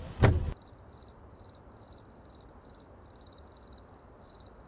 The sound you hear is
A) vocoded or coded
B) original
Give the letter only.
B